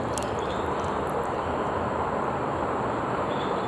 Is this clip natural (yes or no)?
no